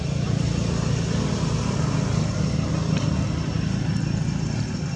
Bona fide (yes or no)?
yes